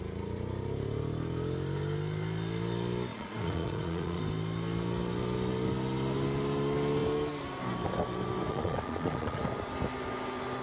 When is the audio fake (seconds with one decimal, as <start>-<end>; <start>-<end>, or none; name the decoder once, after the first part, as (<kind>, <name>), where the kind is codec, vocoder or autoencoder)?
3.1-4.2 (vocoder, Vocos); 8.5-9.4